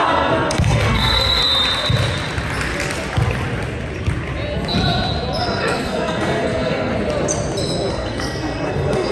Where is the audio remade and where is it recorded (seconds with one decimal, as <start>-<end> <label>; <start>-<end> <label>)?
0.0-1.4 remade; 1.4-5.4 recorded; 5.4-6.9 remade; 6.9-7.9 recorded; 7.9-9.1 remade

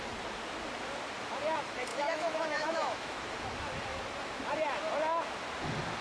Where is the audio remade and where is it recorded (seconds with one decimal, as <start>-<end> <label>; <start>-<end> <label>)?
0.0-1.9 recorded; 1.9-3.2 remade; 3.2-6.0 recorded

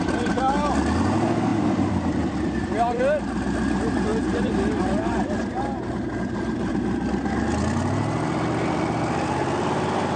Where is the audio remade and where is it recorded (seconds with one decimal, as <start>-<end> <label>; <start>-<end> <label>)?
0.0-1.5 recorded; 1.5-3.0 remade; 3.0-4.1 recorded; 4.1-6.7 remade; 6.7-10.2 recorded

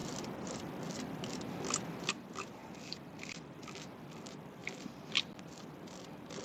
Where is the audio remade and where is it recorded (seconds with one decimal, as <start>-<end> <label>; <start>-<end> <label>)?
0.0-2.6 recorded; 2.6-3.6 remade; 3.6-4.6 recorded; 4.6-5.6 remade; 5.6-6.4 recorded